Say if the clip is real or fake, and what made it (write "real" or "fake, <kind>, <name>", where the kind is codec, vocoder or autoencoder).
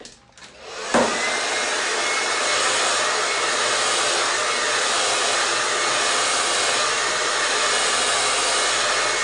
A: real